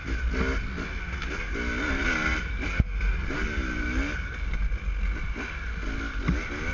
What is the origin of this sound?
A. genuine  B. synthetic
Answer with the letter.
A